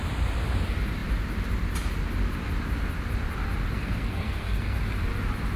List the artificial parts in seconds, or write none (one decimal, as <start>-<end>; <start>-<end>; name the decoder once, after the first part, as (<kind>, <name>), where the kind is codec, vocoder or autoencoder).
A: 3.7-4.8 (codec, SNAC)